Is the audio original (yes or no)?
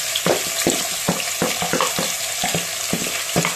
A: yes